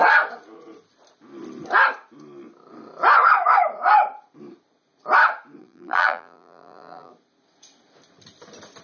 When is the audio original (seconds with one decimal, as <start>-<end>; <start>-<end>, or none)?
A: 0.0-5.6; 7.1-8.8